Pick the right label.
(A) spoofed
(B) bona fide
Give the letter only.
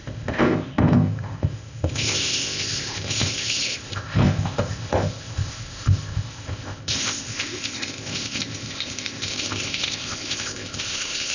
A